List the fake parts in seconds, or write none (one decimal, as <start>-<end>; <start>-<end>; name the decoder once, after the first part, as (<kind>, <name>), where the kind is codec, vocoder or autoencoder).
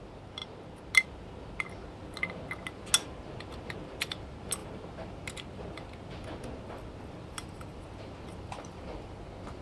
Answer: none